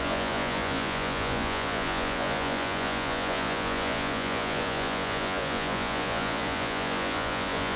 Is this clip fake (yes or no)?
yes